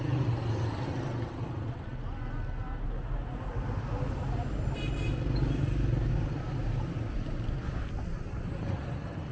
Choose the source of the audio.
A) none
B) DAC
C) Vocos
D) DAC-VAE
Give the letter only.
A